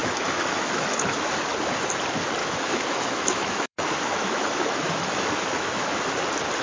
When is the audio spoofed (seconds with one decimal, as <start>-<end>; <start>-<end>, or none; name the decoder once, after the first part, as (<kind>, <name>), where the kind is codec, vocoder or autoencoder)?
0.0-1.3 (autoencoder, DAC-VAE); 2.4-5.9